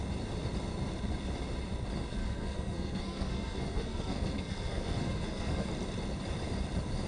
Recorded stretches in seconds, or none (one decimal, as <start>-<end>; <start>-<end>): 0.0-2.2; 5.7-7.1